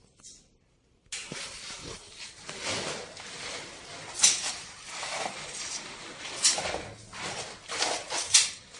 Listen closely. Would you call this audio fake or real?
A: real